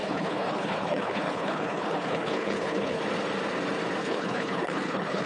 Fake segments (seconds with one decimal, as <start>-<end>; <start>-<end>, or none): 0.0-3.0; 4.0-5.3